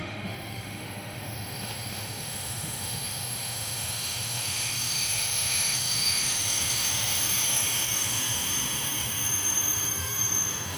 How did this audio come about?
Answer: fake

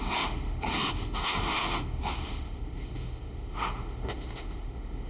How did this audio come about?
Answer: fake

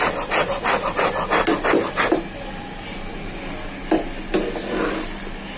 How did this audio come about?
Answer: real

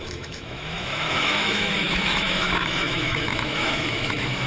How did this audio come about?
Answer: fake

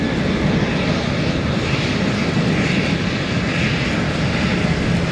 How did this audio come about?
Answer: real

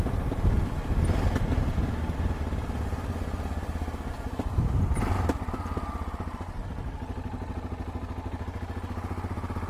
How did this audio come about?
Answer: real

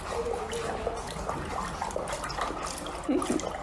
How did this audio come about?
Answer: real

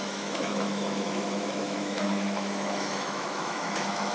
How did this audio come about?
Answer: fake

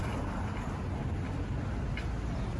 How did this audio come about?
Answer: real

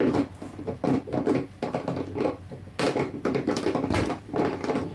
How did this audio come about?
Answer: real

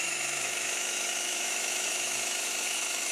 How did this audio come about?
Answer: fake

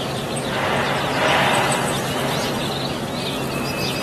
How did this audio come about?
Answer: real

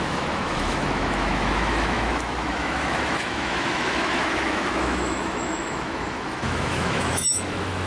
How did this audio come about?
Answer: fake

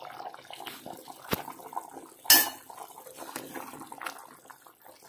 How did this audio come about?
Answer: real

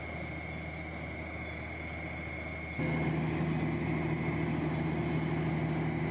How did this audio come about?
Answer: real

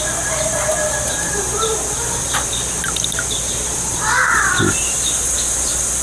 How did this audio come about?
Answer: real